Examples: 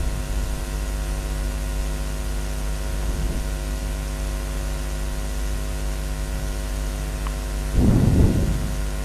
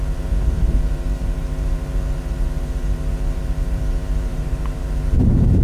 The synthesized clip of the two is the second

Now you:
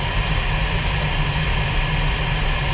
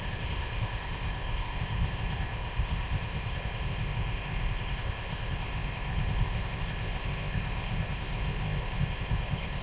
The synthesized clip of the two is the second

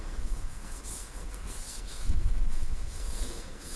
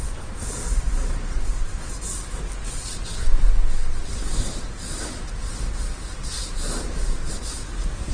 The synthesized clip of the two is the first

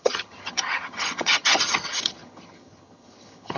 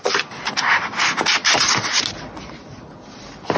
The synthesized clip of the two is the first